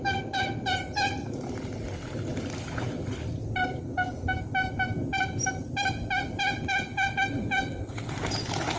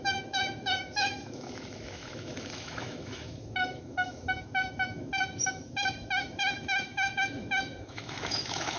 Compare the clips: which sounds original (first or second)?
first